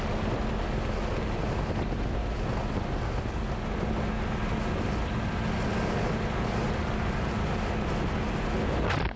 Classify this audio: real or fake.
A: real